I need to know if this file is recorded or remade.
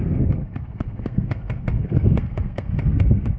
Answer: remade